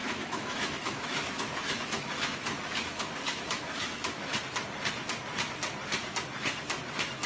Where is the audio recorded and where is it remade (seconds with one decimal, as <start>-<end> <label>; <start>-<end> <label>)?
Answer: 0.0-4.4 remade; 4.4-7.3 recorded